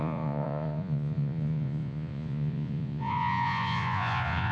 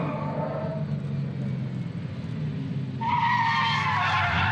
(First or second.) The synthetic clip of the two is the first